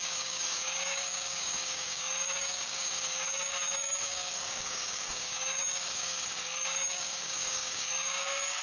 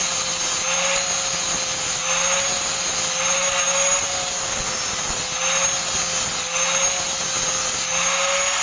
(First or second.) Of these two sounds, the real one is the second